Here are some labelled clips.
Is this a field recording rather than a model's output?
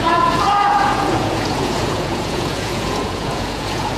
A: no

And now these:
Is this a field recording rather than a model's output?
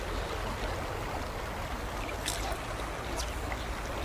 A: yes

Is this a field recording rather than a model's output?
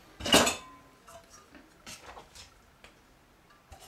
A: yes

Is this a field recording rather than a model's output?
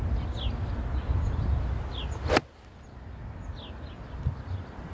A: yes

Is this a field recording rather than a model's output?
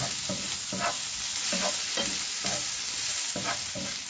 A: yes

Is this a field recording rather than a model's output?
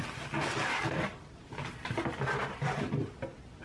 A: yes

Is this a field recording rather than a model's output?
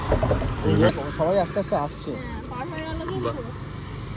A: yes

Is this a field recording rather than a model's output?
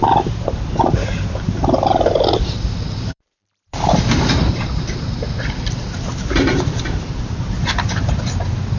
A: no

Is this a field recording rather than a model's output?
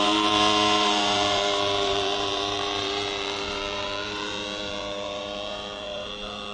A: no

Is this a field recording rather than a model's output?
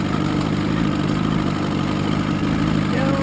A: yes